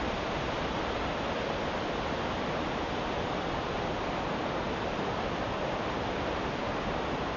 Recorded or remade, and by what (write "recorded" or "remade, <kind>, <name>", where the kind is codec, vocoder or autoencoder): recorded